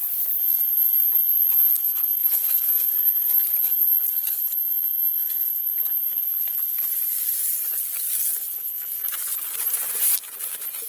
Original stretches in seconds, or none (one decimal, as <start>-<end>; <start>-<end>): 0.0-10.9